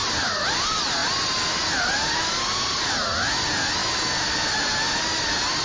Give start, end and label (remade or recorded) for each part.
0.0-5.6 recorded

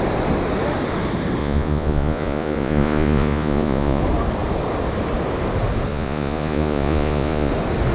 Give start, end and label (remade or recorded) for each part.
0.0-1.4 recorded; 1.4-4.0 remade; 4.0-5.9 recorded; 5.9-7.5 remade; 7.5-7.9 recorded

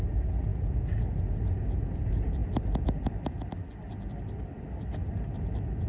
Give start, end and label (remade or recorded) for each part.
0.0-5.9 recorded